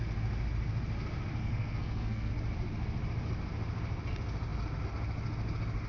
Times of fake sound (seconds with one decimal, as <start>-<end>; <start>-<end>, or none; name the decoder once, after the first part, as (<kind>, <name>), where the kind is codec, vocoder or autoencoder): 1.4-2.3 (codec, SNAC)